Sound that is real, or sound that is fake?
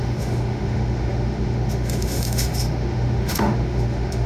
fake